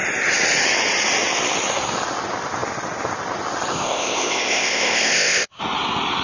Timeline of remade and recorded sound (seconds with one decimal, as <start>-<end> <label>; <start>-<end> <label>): 0.0-3.7 recorded; 3.7-5.6 remade; 5.6-6.2 recorded